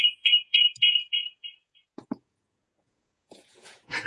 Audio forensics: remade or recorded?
remade